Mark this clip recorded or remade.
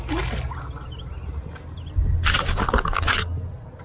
recorded